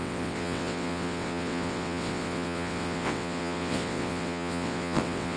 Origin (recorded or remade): remade